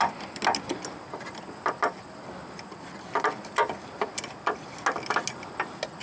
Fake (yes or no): no